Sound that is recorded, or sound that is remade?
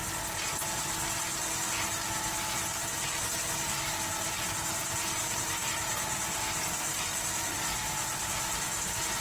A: recorded